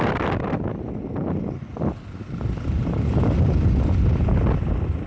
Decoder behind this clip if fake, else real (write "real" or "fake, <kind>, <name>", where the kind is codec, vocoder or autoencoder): real